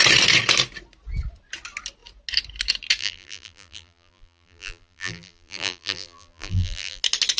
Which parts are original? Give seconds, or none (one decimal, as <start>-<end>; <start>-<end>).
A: 0.0-3.0; 7.0-7.4